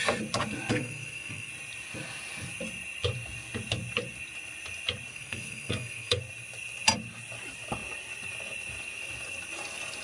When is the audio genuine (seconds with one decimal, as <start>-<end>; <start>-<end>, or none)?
0.0-0.7; 1.5-5.1; 6.2-10.0